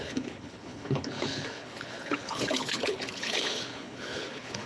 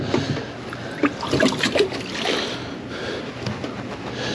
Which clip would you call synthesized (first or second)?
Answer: first